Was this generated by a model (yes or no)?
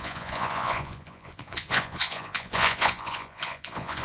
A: yes